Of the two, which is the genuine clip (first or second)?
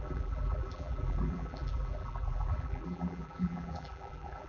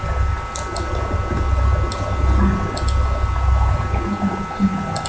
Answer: second